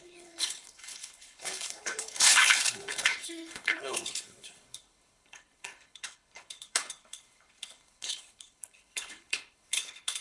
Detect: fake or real fake